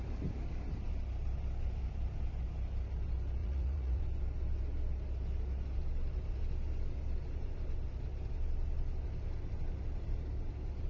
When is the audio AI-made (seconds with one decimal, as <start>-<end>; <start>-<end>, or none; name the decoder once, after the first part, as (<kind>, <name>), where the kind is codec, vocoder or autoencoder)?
3.4-4.0 (vocoder, Vocos)